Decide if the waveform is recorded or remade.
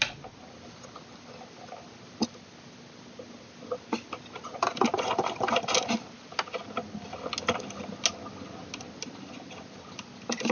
recorded